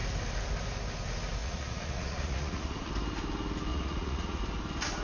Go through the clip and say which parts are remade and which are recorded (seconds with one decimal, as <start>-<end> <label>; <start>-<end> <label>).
0.0-1.4 recorded; 1.4-2.9 remade; 2.9-3.7 recorded; 3.7-4.4 remade; 4.4-5.0 recorded

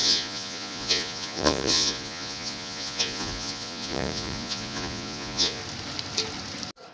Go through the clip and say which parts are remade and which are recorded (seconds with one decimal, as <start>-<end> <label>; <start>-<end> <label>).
0.0-5.6 remade; 5.6-6.9 recorded

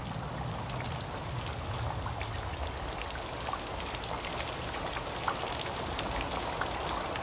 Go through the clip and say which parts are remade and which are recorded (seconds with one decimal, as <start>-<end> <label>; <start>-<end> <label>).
0.0-7.2 recorded